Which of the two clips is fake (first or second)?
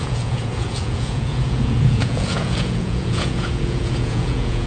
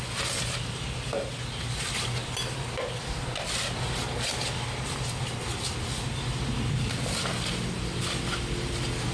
first